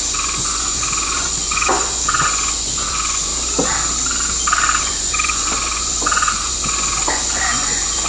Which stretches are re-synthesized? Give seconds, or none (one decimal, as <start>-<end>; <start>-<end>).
0.0-3.3; 4.8-8.1